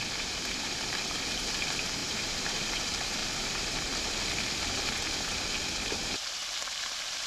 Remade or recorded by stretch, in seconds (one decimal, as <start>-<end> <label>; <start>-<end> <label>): 0.0-3.2 remade; 3.2-4.8 recorded; 4.8-7.3 remade